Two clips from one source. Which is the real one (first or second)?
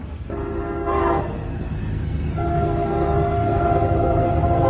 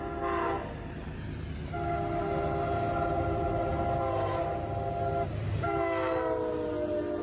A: second